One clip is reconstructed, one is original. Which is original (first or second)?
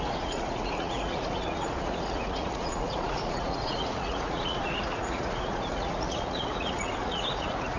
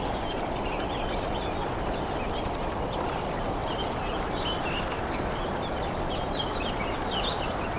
second